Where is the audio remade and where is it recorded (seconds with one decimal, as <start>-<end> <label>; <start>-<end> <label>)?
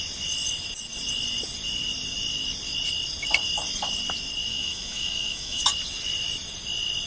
0.0-4.5 recorded; 4.5-5.6 remade; 5.6-7.1 recorded